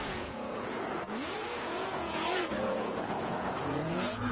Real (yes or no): no